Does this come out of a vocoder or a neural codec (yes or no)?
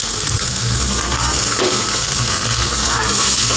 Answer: yes